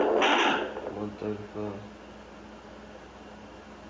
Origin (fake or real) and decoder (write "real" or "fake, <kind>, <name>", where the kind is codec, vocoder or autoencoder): real